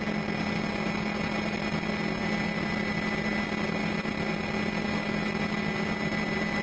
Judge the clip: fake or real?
real